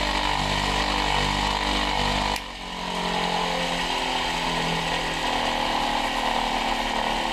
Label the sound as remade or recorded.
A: recorded